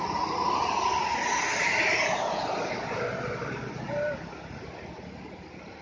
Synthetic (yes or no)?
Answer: no